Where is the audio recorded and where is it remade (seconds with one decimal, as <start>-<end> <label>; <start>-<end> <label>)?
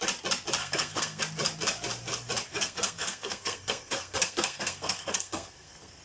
0.0-0.6 recorded; 0.6-1.2 remade; 1.2-2.5 recorded; 2.5-6.0 remade